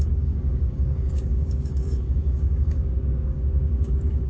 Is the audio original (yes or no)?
no